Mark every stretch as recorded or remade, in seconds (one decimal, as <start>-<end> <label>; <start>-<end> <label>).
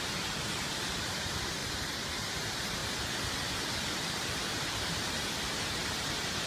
0.0-1.6 remade; 1.6-2.3 recorded; 2.3-2.8 remade; 2.8-3.9 recorded; 3.9-6.5 remade